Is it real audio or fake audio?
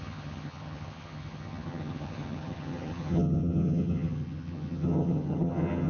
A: fake